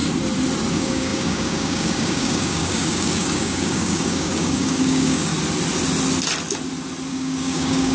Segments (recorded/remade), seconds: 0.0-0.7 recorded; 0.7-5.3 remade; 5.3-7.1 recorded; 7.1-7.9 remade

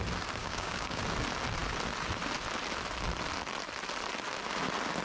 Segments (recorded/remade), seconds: 0.0-0.4 recorded; 0.4-1.0 remade; 1.0-5.0 recorded